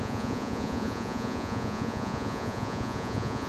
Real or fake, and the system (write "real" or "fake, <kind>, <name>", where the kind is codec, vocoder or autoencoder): fake, vocoder, Vocos